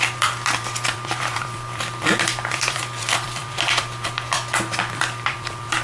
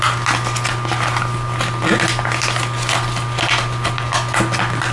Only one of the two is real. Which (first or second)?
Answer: second